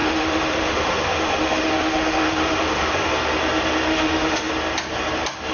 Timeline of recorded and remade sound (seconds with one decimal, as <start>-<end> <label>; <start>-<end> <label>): 0.0-3.1 remade; 3.1-3.9 recorded; 3.9-4.5 remade; 4.5-5.5 recorded